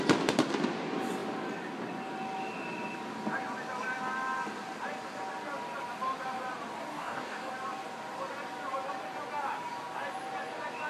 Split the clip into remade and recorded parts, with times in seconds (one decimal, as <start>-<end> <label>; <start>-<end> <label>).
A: 0.0-6.9 recorded; 6.9-7.5 remade; 7.5-10.9 recorded